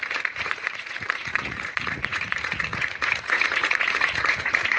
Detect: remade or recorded remade